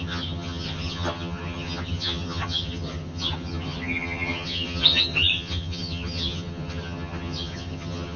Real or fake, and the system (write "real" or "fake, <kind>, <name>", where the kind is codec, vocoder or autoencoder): fake, vocoder, HiFi-GAN